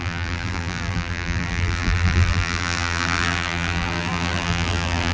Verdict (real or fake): fake